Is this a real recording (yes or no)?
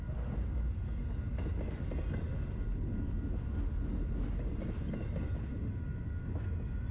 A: yes